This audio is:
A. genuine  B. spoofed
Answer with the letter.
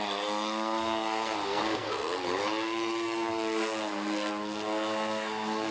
B